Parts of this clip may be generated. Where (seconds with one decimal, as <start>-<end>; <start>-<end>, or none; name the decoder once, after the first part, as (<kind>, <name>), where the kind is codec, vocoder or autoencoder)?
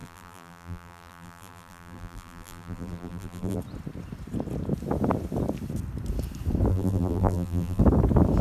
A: 0.0-3.6 (vocoder, BigVGAN v2); 6.7-7.8